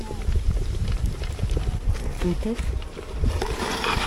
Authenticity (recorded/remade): remade